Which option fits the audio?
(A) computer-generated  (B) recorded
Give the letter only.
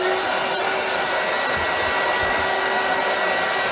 B